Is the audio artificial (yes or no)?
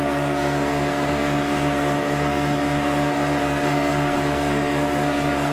yes